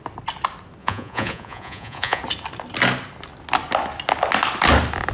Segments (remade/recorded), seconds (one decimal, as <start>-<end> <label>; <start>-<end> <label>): 0.0-0.8 recorded; 0.8-2.2 remade; 2.2-5.1 recorded